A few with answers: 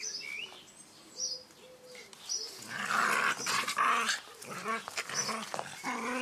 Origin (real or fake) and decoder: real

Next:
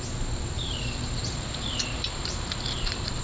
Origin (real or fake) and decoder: fake, vocoder, BigVGAN v2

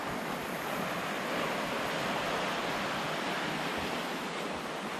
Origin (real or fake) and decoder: real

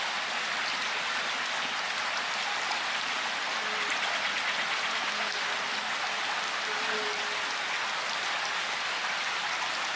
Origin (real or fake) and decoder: real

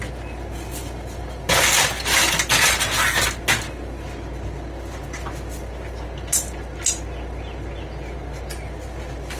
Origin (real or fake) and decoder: real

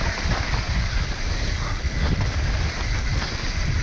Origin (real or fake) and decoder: fake, vocoder, BigVGAN v2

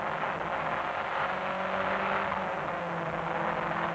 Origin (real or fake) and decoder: real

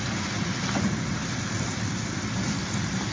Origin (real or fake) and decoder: real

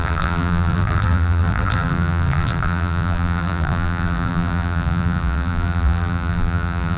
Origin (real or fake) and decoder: fake, vocoder, BigVGAN v2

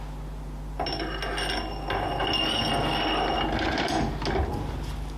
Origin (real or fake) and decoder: real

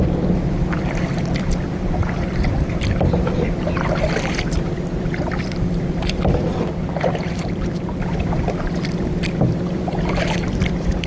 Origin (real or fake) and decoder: fake, vocoder, BigVGAN v2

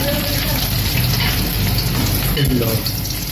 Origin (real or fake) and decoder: real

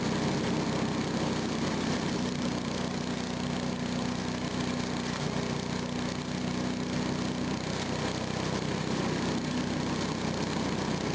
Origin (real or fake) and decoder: real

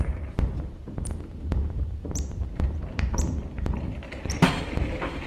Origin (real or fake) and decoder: fake, vocoder, BigVGAN v2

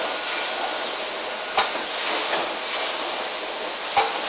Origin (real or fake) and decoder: real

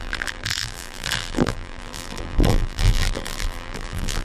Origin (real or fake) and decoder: fake, vocoder, BigVGAN v2